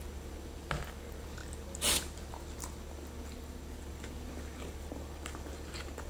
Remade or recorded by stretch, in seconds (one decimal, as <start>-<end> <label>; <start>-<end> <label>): 0.0-6.1 recorded